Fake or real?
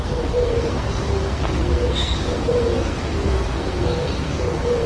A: fake